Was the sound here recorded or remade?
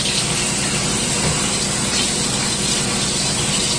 recorded